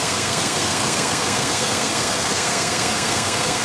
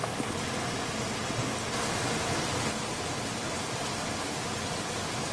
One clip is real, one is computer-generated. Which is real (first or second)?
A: second